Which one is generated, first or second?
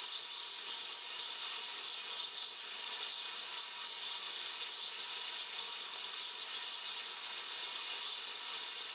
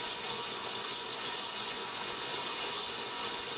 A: second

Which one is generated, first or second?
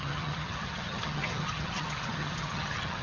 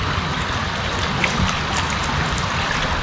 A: first